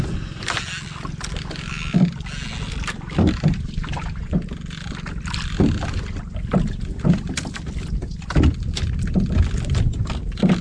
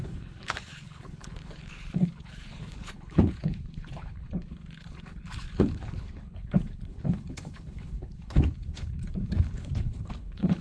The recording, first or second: first